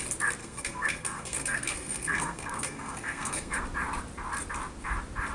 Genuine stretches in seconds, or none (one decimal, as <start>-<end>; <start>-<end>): 0.0-0.4; 3.6-5.3